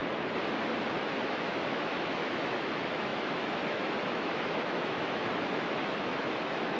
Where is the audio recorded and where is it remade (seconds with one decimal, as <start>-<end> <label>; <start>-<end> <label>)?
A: 0.0-0.8 recorded; 0.8-6.8 remade